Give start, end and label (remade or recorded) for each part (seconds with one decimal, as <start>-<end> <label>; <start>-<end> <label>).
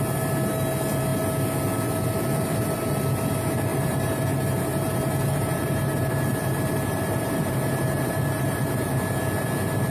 0.0-3.7 recorded; 3.7-8.9 remade; 8.9-9.9 recorded